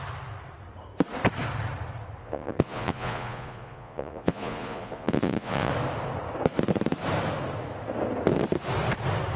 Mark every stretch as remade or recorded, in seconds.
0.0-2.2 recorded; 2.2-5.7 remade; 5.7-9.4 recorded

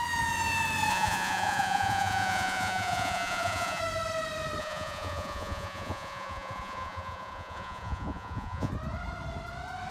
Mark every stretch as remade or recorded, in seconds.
0.0-0.9 recorded; 0.9-3.8 remade; 3.8-4.6 recorded; 4.6-8.7 remade; 8.7-9.9 recorded

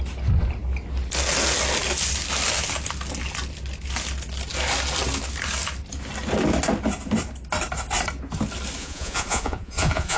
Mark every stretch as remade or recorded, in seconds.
0.0-8.8 recorded; 8.8-10.2 remade